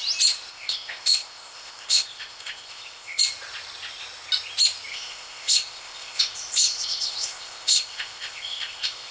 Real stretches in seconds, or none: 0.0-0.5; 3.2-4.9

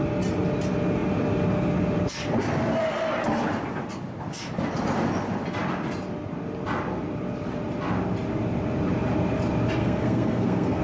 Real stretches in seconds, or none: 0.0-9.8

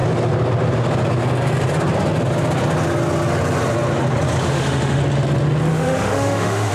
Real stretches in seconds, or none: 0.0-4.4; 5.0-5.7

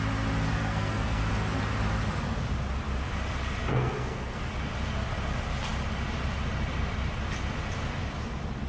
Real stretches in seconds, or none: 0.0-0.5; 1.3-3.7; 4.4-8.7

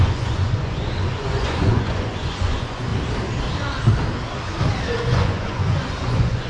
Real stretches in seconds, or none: 2.9-5.0

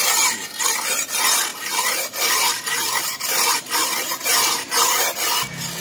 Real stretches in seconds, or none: 0.0-1.5; 5.0-5.8

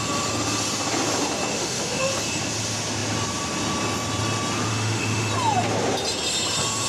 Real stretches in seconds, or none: 0.0-1.5; 2.1-4.7; 5.3-6.9